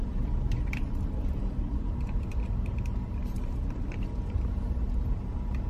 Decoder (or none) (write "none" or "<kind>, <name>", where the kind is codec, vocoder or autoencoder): vocoder, BigVGAN v2